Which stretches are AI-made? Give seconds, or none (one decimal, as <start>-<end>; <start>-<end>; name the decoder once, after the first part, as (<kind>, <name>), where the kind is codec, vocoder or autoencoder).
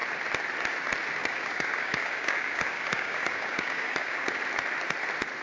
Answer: 1.2-4.4 (codec, DAC)